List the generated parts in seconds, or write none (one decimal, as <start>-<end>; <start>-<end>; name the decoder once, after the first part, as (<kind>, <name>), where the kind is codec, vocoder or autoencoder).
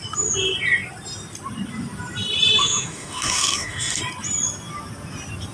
2.6-4.0 (autoencoder, DAC-VAE)